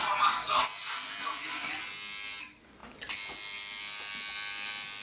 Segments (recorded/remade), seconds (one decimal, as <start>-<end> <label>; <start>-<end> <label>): 0.0-5.0 recorded